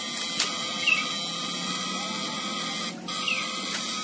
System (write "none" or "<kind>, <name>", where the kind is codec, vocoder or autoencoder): none